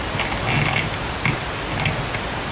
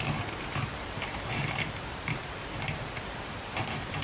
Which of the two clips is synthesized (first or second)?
second